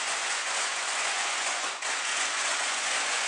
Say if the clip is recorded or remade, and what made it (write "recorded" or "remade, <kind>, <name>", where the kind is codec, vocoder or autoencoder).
remade, vocoder, Vocos